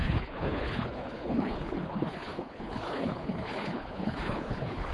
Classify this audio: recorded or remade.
remade